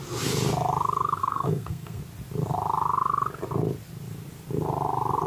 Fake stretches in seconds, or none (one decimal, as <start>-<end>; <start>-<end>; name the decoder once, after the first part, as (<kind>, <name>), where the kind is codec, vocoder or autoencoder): 1.2-2.0 (codec, SNAC)